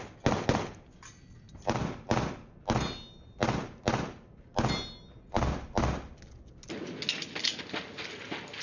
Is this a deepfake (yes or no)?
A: no